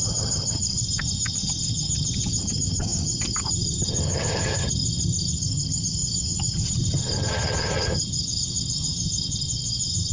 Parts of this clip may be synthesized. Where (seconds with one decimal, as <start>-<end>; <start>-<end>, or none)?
0.0-10.1